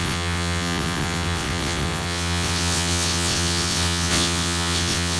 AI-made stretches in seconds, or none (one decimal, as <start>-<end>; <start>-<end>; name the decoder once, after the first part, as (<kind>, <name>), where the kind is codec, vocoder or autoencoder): 0.0-5.2 (vocoder, WaveNeXt)